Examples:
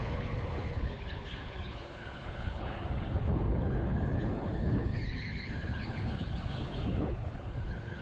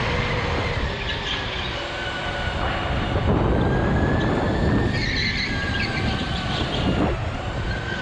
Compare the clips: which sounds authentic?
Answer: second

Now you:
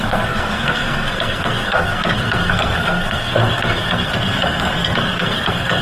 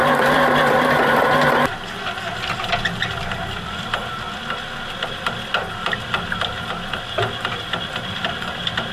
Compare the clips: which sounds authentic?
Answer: second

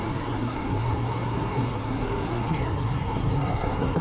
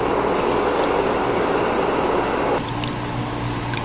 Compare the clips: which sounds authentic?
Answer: second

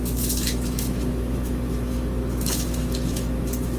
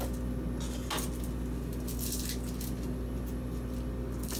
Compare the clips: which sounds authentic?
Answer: second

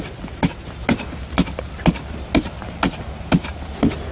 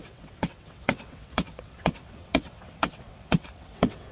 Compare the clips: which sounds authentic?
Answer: first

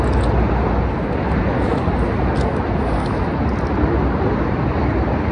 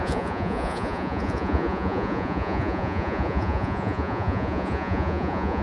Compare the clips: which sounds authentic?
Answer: first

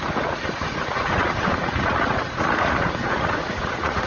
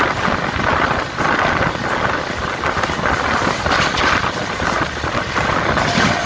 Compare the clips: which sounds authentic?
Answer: second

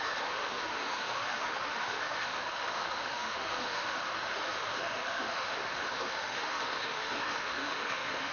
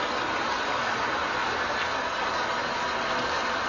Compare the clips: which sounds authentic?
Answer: second